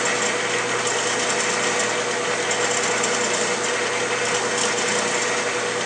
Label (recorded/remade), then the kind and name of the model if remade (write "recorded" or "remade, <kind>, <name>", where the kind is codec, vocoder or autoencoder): recorded